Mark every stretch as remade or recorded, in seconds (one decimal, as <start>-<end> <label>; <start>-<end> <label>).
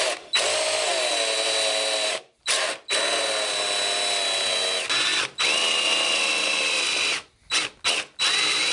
0.0-8.7 recorded